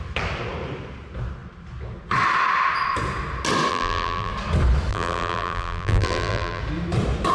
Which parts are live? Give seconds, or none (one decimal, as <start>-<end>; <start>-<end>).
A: 0.0-3.7; 4.3-4.9; 6.6-7.3